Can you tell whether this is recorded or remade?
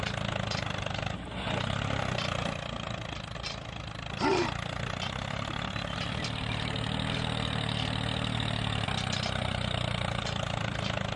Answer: recorded